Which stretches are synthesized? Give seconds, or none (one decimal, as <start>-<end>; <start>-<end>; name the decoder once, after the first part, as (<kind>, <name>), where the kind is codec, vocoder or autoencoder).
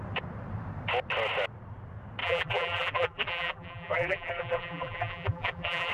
2.2-5.9 (vocoder, BigVGAN v2)